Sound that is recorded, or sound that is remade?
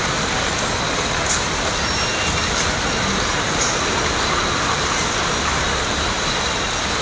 recorded